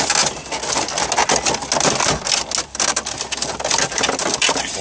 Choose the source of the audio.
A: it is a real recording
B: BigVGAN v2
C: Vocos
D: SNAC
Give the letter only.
A